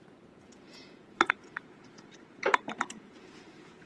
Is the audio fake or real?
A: fake